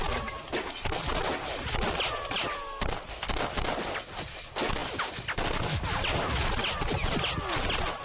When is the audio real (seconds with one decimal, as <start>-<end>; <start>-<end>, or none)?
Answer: 0.0-8.0